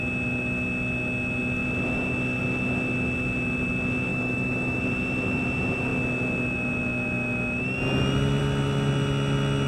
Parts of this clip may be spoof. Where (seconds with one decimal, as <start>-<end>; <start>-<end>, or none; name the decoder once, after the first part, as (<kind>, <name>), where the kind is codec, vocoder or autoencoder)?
4.1-4.8 (autoencoder, DAC-VAE)